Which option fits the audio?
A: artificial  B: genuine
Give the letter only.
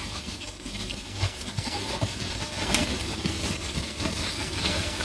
A